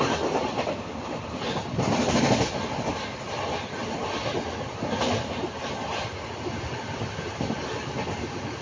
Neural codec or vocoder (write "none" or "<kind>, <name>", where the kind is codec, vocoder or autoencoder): none